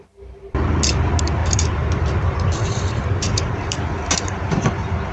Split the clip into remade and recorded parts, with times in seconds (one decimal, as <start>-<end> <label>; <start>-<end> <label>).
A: 0.0-1.4 recorded; 1.4-4.5 remade; 4.5-5.1 recorded